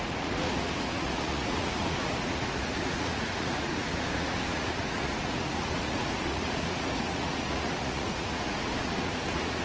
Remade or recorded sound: remade